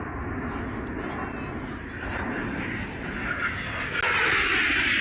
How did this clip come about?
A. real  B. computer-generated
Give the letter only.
A